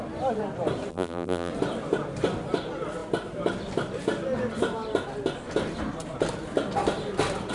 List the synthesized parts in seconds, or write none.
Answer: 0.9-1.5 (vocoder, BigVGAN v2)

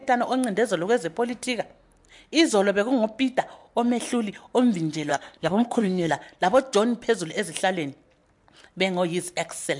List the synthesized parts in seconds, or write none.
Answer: 5.1-6.1 (codec, SNAC)